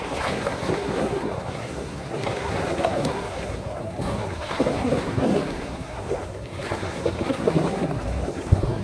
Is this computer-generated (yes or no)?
yes